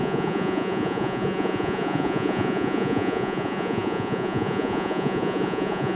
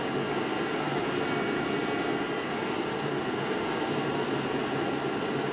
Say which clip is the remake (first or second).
first